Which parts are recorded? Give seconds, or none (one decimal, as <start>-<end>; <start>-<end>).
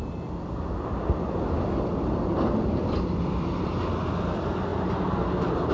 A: 0.0-5.7